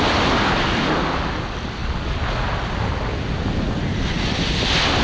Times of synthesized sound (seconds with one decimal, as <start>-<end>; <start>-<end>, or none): none